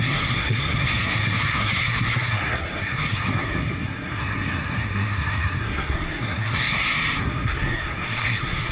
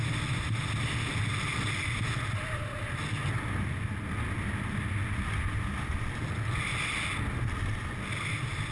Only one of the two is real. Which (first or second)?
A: second